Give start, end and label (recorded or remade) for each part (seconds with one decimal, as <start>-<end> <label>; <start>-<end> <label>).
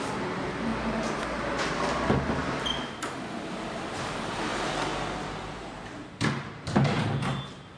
0.0-0.7 remade; 0.7-1.6 recorded; 1.6-4.9 remade; 4.9-5.8 recorded; 5.8-7.8 remade